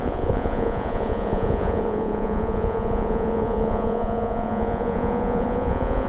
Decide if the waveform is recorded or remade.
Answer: remade